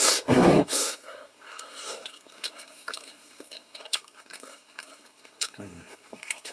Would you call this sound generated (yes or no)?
yes